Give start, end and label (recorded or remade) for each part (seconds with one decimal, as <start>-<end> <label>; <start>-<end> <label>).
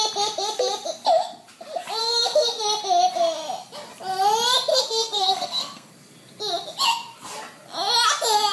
0.0-2.0 recorded; 2.0-2.6 remade; 2.6-4.7 recorded; 4.7-5.9 remade; 5.9-8.5 recorded